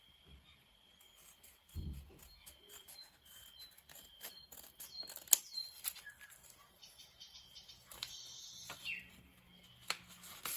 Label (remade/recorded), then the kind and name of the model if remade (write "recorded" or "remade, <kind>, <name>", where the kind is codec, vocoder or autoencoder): recorded